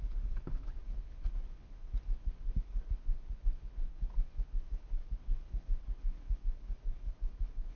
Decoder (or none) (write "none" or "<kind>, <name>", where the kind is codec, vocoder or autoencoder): codec, HILCodec